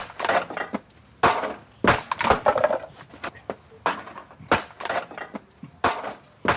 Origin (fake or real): real